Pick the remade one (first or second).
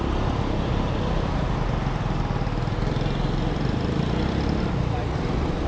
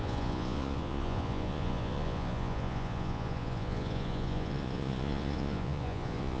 second